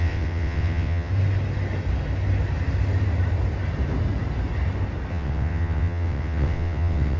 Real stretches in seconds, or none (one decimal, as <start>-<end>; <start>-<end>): 1.1-5.1